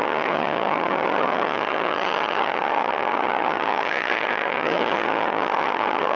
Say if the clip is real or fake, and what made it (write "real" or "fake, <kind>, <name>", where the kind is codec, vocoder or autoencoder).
fake, vocoder, HiFi-GAN